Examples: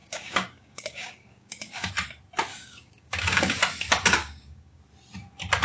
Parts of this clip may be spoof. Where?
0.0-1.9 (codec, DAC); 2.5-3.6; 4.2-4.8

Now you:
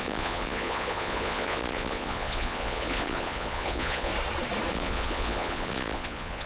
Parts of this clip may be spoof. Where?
0.0-4.1 (vocoder, Vocos); 4.7-6.5

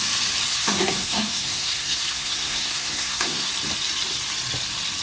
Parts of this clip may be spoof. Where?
0.5-3.5 (codec, SNAC)